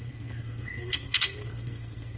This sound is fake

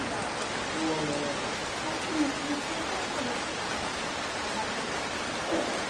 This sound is real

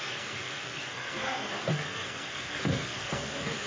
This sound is fake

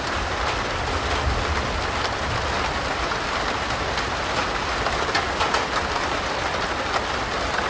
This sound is real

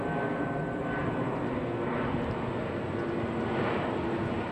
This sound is real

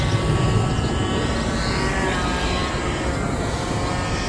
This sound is real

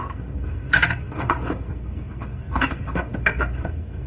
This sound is fake